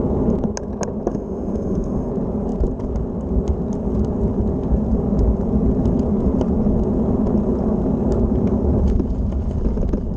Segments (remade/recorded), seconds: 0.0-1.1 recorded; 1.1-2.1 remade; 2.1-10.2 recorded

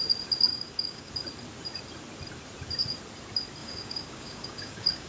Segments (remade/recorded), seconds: 0.0-0.5 recorded; 0.5-1.1 remade; 1.1-3.6 recorded; 3.6-5.1 remade